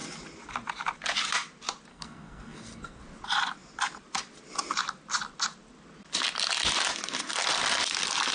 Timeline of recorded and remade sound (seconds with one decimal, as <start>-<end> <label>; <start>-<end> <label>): 0.0-1.9 recorded; 1.9-3.0 remade; 3.0-8.3 recorded